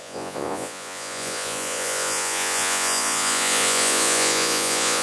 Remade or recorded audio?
remade